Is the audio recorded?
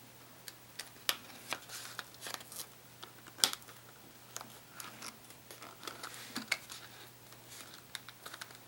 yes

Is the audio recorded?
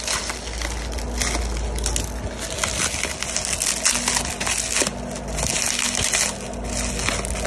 yes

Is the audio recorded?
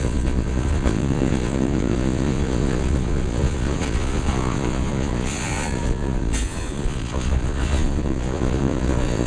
no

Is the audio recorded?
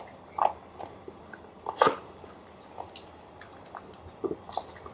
yes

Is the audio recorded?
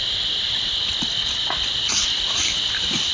yes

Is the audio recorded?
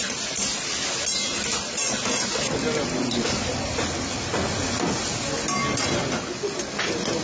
yes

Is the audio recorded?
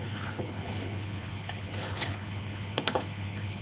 no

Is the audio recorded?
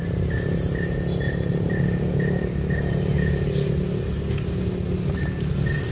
yes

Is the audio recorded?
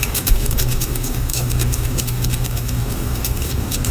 no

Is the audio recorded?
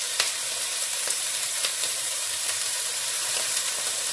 no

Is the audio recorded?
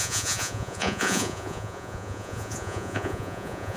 no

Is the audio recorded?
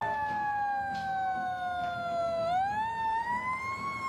yes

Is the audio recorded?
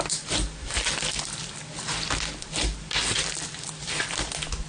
yes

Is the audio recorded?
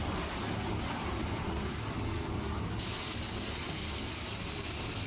yes